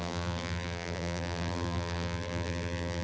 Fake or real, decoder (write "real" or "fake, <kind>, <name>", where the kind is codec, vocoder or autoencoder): fake, vocoder, BigVGAN v2